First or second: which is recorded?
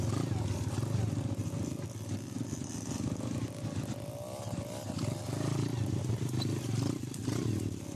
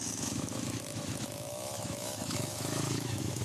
first